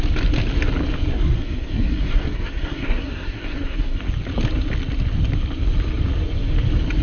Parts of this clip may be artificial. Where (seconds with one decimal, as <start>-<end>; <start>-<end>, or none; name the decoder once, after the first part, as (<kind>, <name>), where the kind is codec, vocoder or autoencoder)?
1.1-4.0 (codec, SNAC)